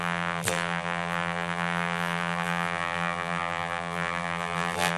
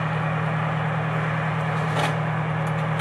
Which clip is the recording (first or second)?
second